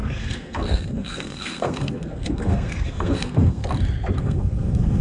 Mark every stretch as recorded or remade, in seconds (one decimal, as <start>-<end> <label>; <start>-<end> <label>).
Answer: 0.0-3.6 remade; 3.6-4.2 recorded; 4.2-5.0 remade